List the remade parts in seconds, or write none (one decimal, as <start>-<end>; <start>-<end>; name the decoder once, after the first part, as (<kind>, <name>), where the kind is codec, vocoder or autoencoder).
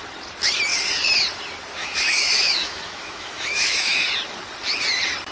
1.8-4.1 (autoencoder, DAC-VAE)